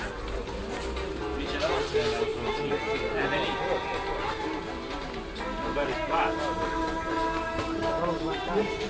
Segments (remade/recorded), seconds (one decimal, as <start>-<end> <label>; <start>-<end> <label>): 0.0-8.9 recorded